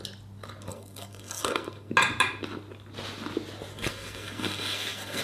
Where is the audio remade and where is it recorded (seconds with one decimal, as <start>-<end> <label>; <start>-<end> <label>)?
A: 0.0-0.7 recorded; 0.7-1.9 remade; 1.9-3.7 recorded; 3.7-5.2 remade